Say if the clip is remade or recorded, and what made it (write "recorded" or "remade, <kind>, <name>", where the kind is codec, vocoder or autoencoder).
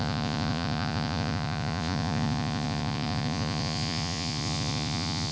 remade, vocoder, Vocos